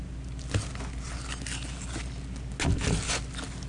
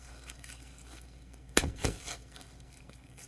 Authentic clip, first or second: first